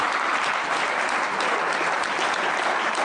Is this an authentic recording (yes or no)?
yes